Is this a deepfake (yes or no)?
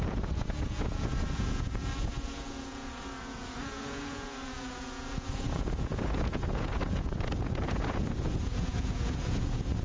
yes